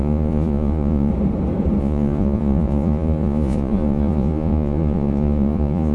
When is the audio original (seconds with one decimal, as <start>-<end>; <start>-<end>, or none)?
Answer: 1.1-1.8